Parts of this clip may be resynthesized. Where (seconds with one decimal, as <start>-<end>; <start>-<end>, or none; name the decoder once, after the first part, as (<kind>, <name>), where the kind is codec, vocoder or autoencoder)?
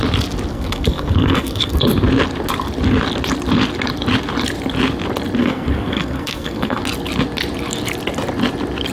0.5-1.8 (codec, SNAC); 5.4-6.8